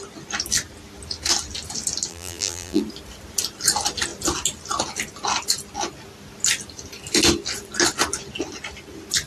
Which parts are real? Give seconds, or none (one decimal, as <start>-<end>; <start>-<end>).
0.0-2.1; 2.8-9.3